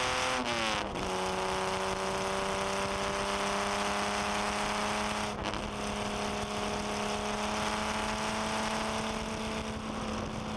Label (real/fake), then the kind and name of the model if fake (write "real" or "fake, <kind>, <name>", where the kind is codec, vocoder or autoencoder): real